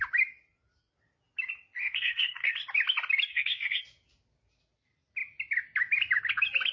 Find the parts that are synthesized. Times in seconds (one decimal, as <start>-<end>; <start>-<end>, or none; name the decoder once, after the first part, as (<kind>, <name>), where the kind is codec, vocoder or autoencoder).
1.8-2.5 (codec, SNAC); 3.3-3.8